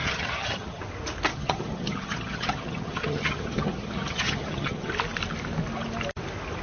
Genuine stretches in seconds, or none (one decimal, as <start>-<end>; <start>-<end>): 0.8-1.3; 4.9-6.6